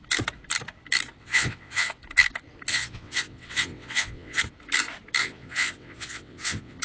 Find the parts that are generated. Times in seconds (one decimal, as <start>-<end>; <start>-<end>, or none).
1.2-1.9; 2.7-4.4; 5.2-6.8